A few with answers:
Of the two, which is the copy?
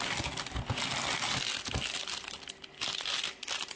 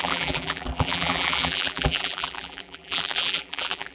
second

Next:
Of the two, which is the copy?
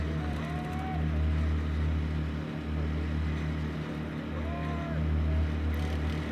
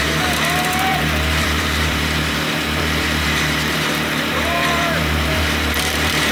second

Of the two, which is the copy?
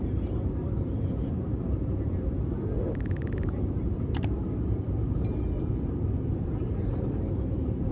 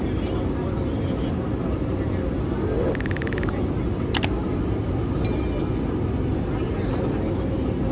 first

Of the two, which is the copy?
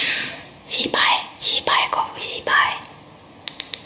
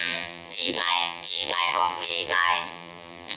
second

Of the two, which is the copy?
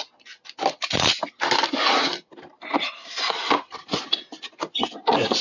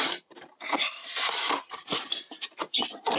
second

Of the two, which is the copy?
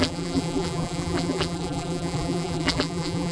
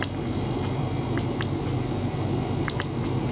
first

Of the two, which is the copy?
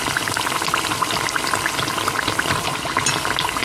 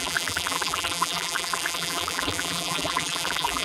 second